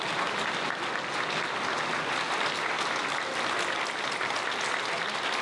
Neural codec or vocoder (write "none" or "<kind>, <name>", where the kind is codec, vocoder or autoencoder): none